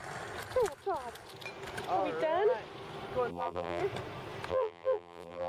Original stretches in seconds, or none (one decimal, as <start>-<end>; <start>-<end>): 0.0-3.3; 3.8-4.5